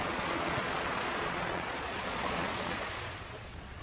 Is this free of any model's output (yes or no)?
no